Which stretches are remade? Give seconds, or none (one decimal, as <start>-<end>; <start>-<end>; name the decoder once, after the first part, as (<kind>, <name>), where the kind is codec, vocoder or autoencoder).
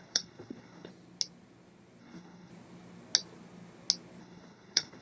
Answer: 0.0-0.9 (codec, HILCodec); 2.0-2.5; 4.2-5.0